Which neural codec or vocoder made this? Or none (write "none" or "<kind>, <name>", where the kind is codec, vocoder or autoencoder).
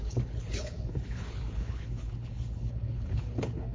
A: codec, HILCodec